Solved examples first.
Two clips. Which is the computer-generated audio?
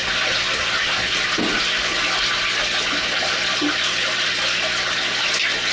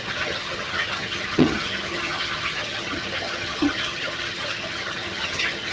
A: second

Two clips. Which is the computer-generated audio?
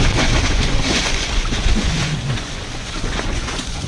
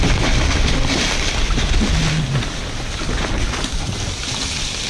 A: first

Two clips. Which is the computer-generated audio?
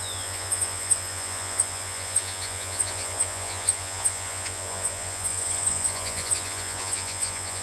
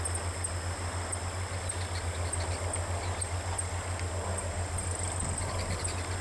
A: first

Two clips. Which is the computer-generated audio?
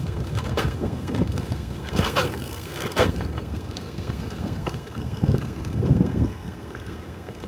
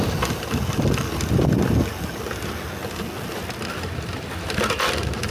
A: first